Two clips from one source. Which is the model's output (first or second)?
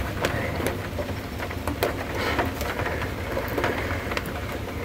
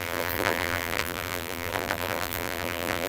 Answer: second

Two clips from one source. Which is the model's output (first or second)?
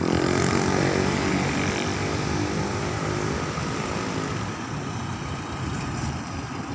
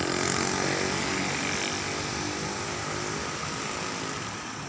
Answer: first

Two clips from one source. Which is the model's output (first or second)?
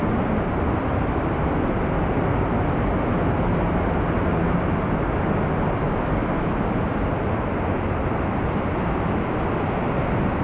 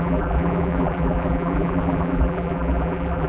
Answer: second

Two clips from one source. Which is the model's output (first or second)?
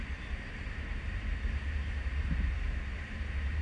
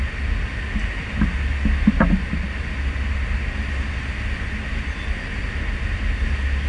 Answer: first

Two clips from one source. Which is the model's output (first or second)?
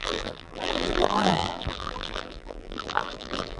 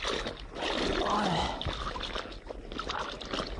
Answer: first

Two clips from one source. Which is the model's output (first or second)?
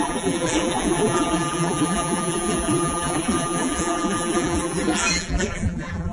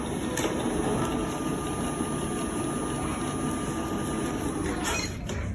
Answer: first